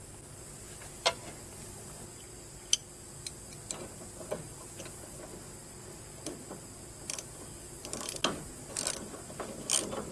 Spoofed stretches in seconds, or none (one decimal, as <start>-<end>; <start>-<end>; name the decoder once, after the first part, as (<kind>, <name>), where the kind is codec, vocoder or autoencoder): none